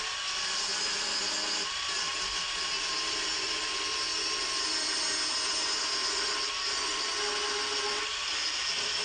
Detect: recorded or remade recorded